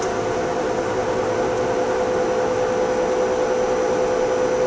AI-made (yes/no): no